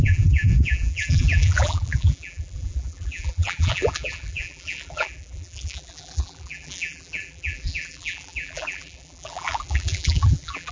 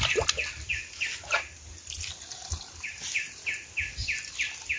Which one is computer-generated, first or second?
first